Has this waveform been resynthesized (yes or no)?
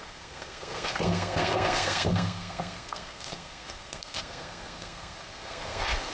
yes